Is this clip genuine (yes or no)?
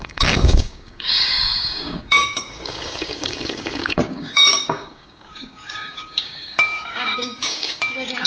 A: no